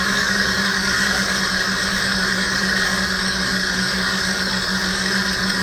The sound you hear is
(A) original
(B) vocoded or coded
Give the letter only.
B